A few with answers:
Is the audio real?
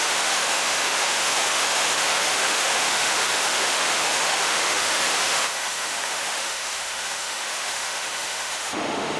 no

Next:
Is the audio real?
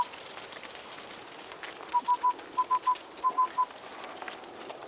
yes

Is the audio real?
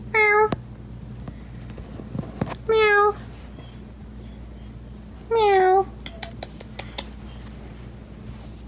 yes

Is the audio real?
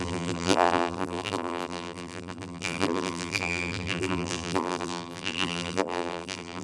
no